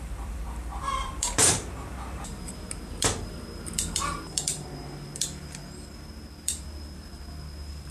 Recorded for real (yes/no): no